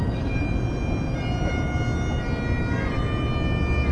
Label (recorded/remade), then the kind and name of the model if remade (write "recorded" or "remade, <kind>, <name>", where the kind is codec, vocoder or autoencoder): recorded